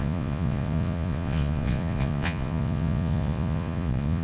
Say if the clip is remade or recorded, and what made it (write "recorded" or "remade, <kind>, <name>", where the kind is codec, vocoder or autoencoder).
remade, vocoder, Vocos